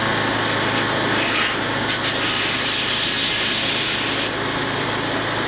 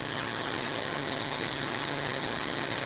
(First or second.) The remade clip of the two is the second